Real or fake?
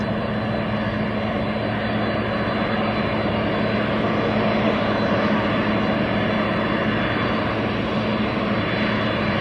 real